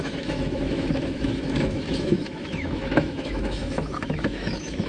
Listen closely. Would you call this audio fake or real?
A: fake